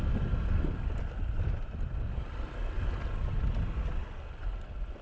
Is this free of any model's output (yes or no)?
yes